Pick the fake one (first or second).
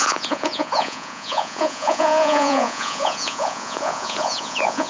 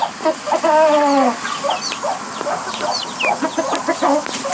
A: first